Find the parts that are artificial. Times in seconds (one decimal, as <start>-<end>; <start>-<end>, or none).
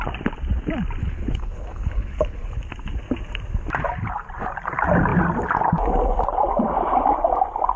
1.0-2.6